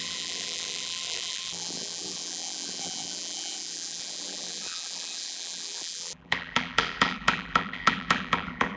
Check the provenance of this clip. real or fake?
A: fake